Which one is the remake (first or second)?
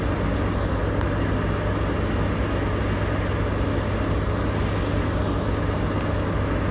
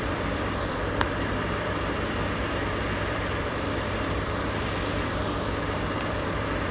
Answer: second